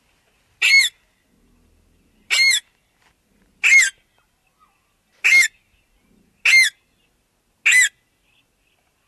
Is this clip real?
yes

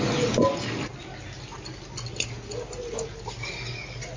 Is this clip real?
yes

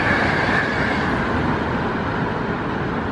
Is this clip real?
yes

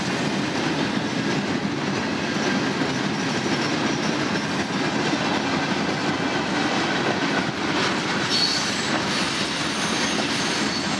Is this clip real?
yes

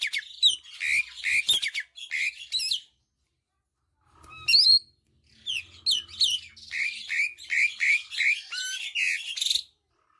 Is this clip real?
yes